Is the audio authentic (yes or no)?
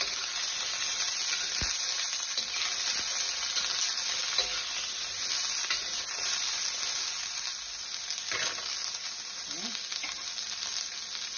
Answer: yes